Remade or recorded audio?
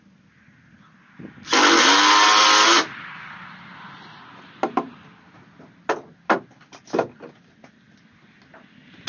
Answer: recorded